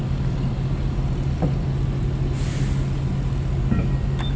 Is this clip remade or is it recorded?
recorded